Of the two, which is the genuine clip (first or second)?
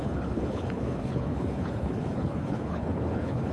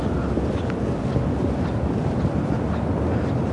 second